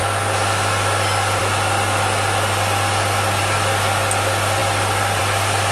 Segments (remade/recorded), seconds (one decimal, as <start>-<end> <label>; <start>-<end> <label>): 0.0-5.7 recorded